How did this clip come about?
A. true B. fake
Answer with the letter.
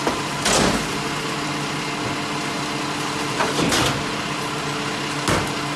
A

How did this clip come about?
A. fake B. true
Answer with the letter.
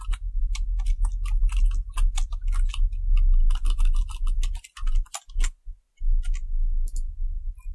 B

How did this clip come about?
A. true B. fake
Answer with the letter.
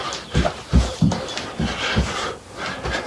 A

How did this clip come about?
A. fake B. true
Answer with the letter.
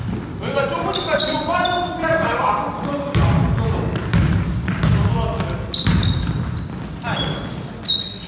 B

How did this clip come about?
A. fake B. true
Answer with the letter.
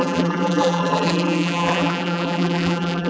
A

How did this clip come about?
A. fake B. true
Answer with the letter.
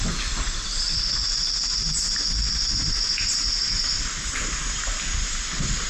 B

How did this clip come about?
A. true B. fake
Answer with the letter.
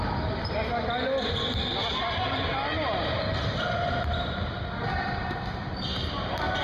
A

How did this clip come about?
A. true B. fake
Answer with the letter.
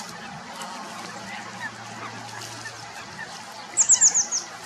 A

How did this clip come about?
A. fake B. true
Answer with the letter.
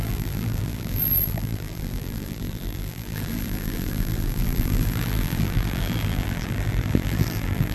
A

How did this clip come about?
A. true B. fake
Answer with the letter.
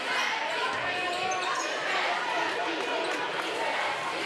A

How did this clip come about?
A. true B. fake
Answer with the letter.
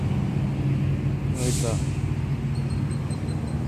A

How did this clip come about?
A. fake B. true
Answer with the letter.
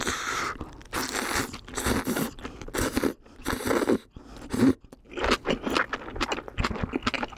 B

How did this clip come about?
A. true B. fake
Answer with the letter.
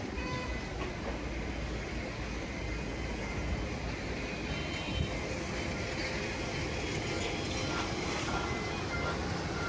A